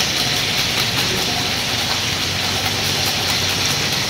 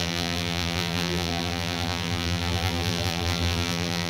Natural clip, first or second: first